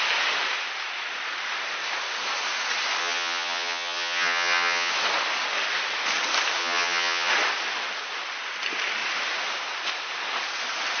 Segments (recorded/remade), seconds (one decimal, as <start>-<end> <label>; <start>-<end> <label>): 0.0-3.0 recorded; 3.0-4.9 remade; 4.9-6.6 recorded; 6.6-7.3 remade; 7.3-11.0 recorded